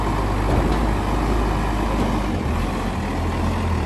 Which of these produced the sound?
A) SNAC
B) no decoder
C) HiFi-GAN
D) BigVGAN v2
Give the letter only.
B